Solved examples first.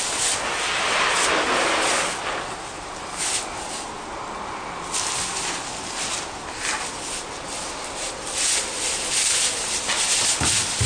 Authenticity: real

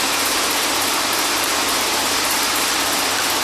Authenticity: fake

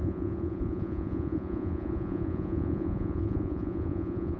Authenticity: fake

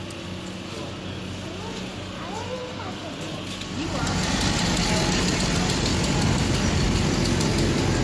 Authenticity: real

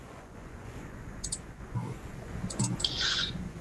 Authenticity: fake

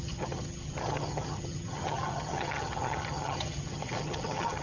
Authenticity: fake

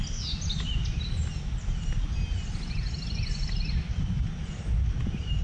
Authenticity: real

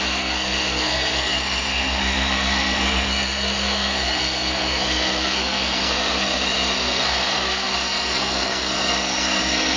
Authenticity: fake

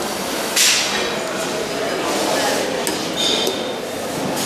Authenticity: real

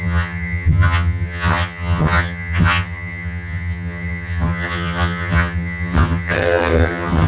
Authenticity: fake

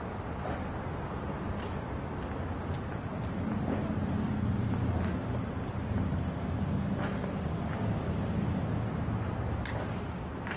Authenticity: real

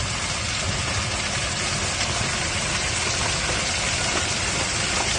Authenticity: real